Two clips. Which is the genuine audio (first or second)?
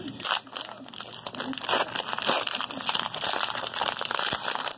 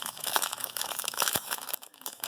first